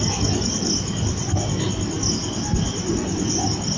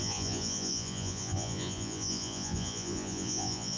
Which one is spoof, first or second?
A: second